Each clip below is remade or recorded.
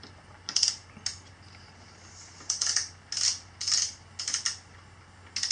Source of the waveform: recorded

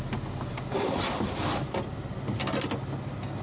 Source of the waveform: recorded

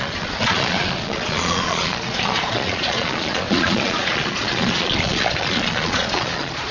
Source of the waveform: remade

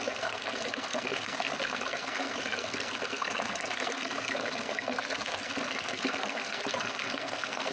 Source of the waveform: remade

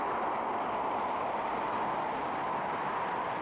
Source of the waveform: recorded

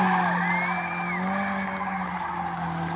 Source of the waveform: recorded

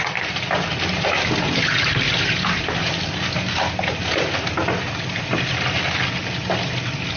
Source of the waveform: recorded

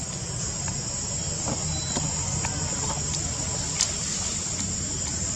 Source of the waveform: recorded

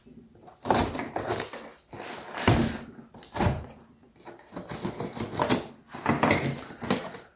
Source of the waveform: recorded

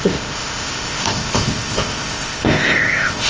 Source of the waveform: remade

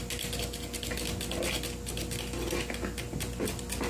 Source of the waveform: recorded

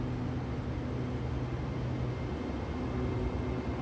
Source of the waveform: recorded